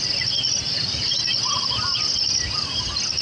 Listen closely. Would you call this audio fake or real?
real